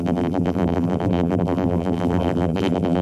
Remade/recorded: remade